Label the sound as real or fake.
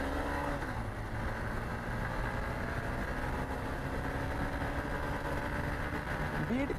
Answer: real